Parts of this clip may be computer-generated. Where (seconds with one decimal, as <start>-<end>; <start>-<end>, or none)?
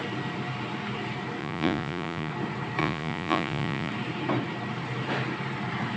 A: 1.4-2.3; 2.8-3.9